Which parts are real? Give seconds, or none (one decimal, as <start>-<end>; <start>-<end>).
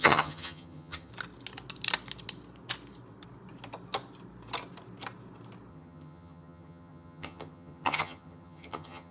1.1-5.7